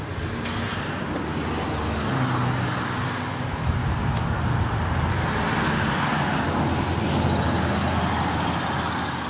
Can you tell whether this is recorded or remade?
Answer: recorded